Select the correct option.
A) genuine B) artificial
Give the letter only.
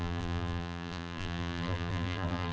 B